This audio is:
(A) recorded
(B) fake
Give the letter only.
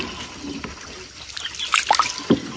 A